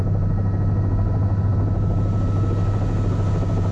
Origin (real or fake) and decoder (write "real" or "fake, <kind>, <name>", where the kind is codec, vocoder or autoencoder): real